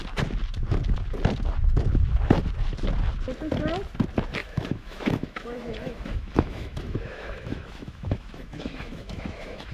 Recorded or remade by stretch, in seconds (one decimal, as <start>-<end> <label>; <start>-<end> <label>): 0.0-4.4 recorded; 4.4-9.7 remade